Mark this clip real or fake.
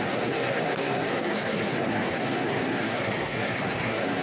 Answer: fake